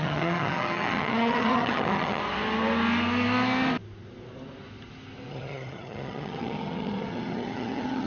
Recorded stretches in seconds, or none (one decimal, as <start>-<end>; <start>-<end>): 2.2-5.3